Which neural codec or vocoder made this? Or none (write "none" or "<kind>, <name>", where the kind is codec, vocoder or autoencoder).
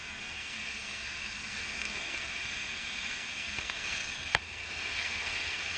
codec, SNAC